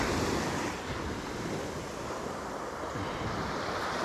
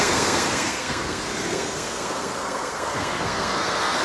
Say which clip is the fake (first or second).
second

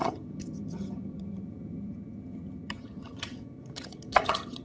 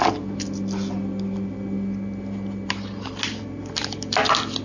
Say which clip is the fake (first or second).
first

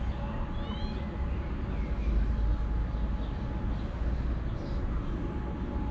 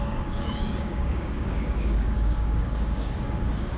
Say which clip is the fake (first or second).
second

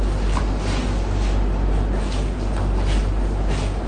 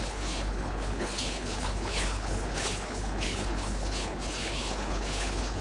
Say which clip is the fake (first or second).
second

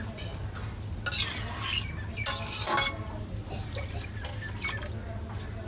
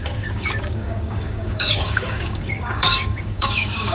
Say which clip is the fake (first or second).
second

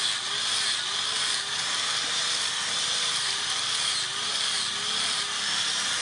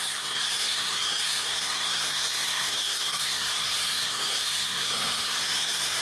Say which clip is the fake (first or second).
second